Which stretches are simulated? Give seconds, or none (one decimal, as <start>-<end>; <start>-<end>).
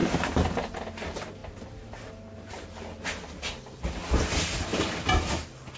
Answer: 0.0-0.8